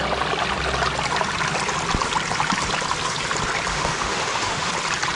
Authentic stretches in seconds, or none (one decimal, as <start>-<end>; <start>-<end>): 0.0-3.7; 4.7-5.2